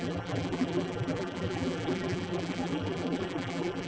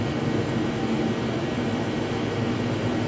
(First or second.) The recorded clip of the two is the second